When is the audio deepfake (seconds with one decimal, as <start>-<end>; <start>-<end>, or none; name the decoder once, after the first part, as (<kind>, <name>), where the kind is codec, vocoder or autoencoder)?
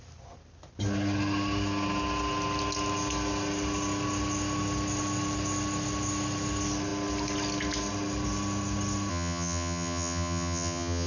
9.1-11.1 (vocoder, HiFi-GAN)